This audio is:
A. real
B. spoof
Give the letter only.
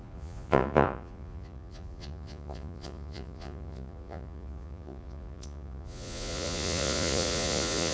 B